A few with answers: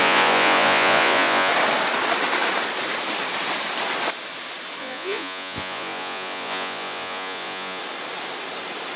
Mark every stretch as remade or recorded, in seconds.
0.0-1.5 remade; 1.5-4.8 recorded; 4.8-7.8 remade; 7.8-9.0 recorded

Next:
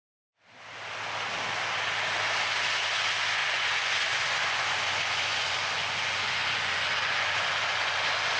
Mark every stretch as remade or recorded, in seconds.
0.0-3.4 recorded; 3.4-8.4 remade

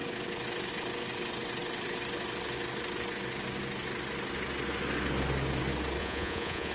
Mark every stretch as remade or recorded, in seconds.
0.0-6.0 recorded; 6.0-6.7 remade

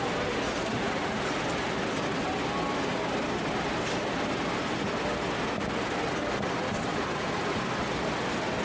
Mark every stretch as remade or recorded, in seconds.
0.0-0.7 recorded; 0.7-1.4 remade; 1.4-6.9 recorded; 6.9-7.6 remade; 7.6-8.6 recorded